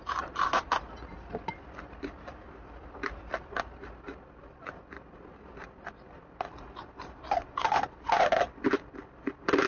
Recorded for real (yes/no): no